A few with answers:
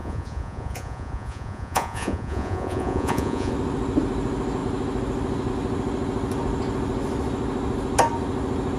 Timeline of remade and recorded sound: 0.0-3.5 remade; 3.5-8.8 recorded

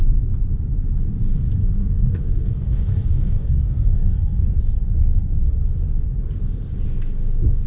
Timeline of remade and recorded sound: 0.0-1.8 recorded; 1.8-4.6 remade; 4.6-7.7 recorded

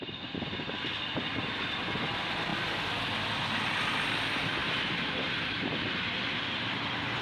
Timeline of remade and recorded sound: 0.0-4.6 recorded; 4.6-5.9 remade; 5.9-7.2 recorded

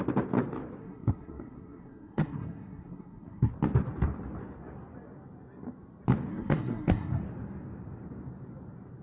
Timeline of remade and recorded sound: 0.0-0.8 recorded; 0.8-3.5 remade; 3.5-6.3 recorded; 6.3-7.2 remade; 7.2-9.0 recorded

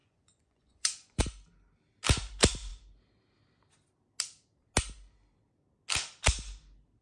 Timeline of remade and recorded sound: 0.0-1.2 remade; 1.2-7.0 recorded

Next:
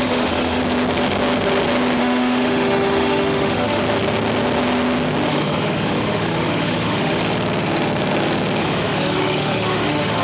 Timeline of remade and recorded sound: 0.0-0.6 remade; 0.6-2.0 recorded; 2.0-3.8 remade; 3.8-5.3 recorded; 5.3-7.2 remade; 7.2-8.6 recorded; 8.6-10.2 remade